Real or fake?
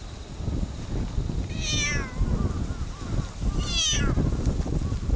real